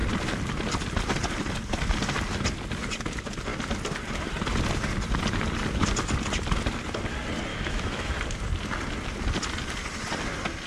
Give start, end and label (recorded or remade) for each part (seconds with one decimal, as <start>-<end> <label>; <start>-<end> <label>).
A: 0.0-7.5 recorded; 7.5-8.1 remade; 8.1-10.7 recorded